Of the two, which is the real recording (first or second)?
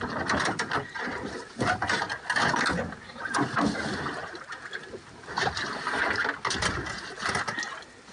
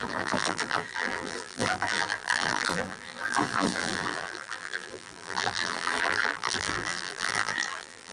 first